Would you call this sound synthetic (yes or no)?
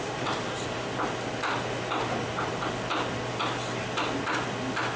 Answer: no